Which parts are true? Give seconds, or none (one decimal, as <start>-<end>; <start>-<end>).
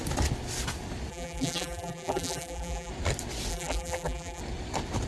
0.0-1.1; 2.9-3.5; 4.4-5.1